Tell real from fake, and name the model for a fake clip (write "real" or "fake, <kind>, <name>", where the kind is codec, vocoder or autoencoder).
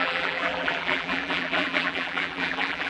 fake, vocoder, BigVGAN v2